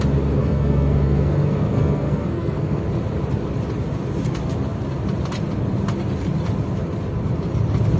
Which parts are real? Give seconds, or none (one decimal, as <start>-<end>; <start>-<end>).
0.0-0.4; 2.9-8.0